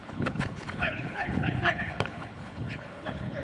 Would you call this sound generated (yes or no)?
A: yes